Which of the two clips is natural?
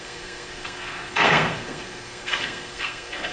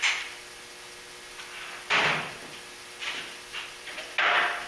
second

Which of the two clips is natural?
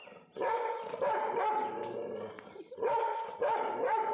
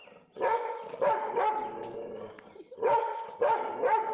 second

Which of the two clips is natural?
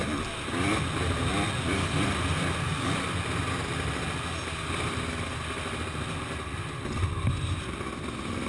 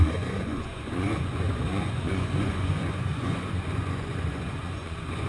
first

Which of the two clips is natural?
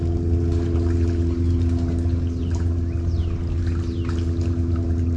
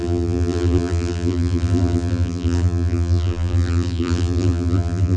first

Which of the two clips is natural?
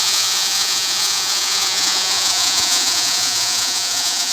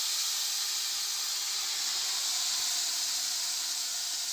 second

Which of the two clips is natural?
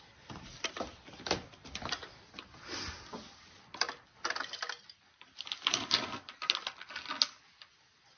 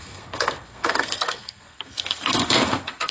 first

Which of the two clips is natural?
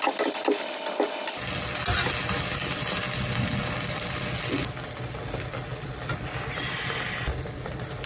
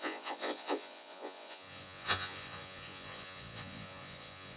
first